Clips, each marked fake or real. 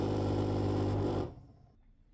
fake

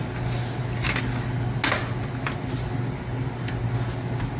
real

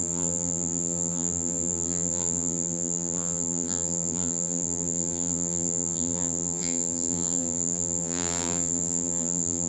fake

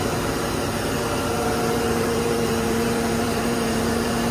fake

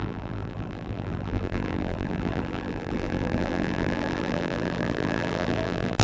fake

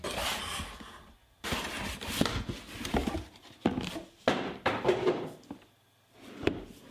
real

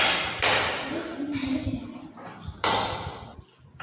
real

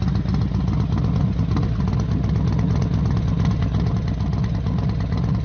real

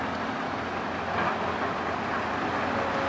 real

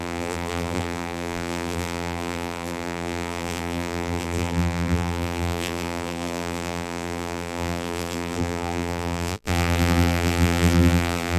fake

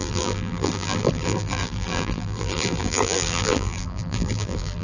fake